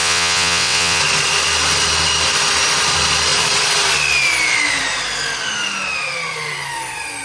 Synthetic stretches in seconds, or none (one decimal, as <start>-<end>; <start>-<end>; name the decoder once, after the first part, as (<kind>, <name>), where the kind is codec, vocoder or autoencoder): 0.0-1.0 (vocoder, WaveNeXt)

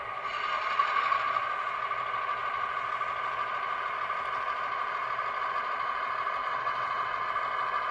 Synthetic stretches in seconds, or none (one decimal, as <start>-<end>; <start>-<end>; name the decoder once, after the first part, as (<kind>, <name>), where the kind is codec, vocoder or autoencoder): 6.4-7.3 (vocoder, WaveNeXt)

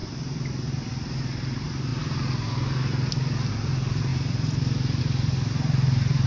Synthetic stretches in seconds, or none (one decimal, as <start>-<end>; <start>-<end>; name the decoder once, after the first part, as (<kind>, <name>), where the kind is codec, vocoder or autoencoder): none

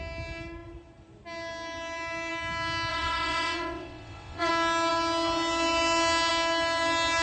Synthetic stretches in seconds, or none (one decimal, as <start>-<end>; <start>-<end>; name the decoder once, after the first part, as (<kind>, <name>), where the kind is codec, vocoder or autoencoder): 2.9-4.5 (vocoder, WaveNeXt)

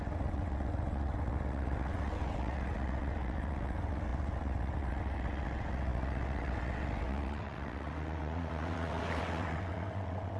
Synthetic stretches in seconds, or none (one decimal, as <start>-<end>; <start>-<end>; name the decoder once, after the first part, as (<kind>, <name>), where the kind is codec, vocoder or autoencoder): 0.0-10.4 (vocoder, WaveNeXt)

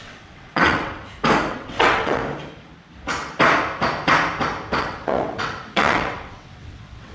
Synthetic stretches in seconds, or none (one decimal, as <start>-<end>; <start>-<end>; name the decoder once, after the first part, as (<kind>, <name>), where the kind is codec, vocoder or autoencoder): 0.0-1.0 (vocoder, WaveNeXt); 1.5-2.2; 4.8-7.1

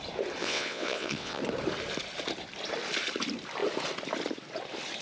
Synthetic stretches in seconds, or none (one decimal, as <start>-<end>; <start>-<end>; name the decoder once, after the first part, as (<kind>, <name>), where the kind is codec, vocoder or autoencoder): 0.4-1.4 (vocoder, WaveNeXt)

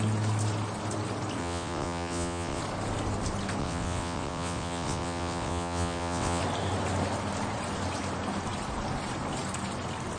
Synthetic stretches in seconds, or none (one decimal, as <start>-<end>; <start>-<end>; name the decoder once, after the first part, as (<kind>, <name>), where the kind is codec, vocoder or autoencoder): 1.4-2.6 (vocoder, WaveNeXt); 3.6-6.4